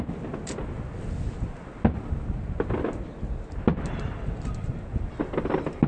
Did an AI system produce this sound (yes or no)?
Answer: no